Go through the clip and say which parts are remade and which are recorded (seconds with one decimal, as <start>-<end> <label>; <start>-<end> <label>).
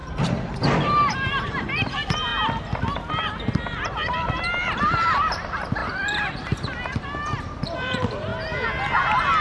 0.0-0.5 recorded; 0.5-2.3 remade; 2.3-3.1 recorded; 3.1-8.3 remade; 8.3-9.4 recorded